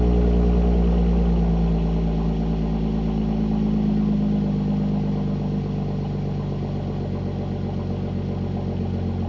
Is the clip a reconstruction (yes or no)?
no